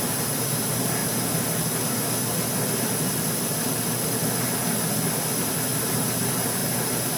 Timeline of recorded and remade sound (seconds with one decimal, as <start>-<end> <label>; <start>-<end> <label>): 0.0-1.0 remade; 1.0-3.7 recorded; 3.7-4.2 remade; 4.2-5.9 recorded; 5.9-6.6 remade; 6.6-7.2 recorded